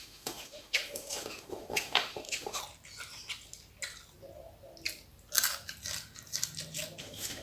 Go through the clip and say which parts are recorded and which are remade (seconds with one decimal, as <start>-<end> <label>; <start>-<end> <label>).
0.0-2.6 remade; 2.6-7.0 recorded; 7.0-7.4 remade